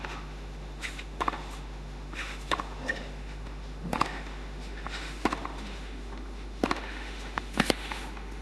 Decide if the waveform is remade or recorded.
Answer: remade